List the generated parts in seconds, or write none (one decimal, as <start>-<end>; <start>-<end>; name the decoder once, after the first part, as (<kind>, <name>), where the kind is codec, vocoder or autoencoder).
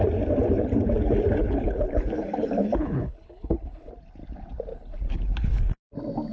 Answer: 1.4-3.9 (codec, HILCodec); 4.7-5.6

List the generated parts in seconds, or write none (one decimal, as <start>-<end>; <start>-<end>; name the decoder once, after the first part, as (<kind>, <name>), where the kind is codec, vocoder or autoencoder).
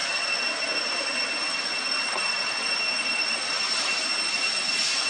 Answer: none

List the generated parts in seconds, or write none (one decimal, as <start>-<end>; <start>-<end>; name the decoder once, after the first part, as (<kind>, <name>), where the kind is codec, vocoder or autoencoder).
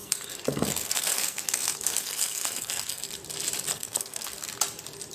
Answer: 0.0-3.1 (codec, SNAC); 3.7-4.5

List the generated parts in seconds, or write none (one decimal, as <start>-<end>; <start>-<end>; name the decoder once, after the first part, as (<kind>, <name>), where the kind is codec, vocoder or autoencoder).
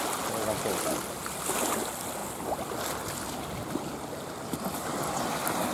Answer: none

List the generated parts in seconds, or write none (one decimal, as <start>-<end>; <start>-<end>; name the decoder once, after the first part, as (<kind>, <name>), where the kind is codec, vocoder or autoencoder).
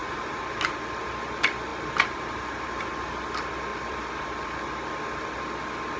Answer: 0.0-0.6 (vocoder, BigVGAN v2); 1.7-3.0; 3.7-4.6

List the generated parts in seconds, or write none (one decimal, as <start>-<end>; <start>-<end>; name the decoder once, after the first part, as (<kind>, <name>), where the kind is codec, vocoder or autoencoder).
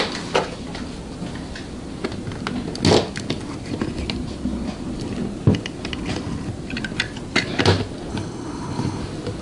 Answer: 8.1-9.0 (codec, HILCodec)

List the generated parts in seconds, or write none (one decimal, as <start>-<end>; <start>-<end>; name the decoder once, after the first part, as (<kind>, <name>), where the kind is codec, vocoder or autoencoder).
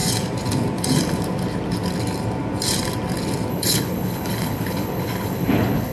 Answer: 3.5-5.9 (codec, HILCodec)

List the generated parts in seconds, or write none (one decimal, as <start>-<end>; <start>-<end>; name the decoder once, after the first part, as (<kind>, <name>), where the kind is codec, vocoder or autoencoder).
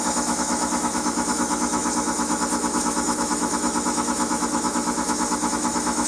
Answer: 0.0-6.1 (autoencoder, DAC-VAE)